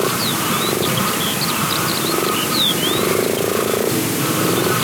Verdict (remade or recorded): remade